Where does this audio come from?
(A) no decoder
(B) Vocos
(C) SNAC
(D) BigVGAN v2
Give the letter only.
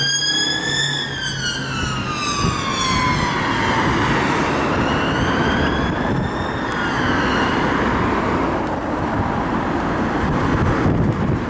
A